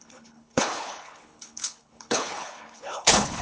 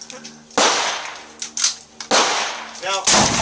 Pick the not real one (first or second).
first